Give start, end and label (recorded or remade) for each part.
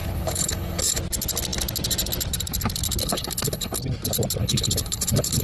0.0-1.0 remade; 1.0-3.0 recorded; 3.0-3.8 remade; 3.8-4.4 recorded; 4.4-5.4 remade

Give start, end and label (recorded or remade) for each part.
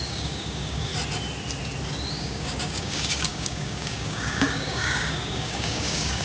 0.0-0.9 remade; 0.9-2.1 recorded; 2.1-6.2 remade